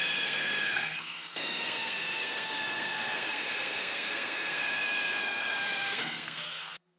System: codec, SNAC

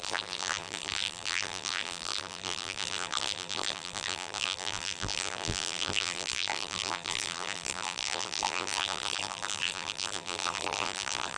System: vocoder, BigVGAN v2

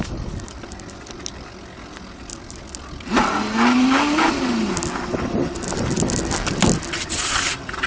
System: none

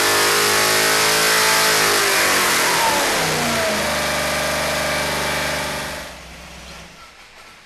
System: none